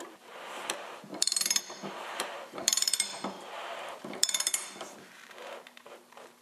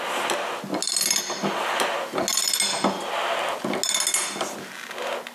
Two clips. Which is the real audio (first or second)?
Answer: second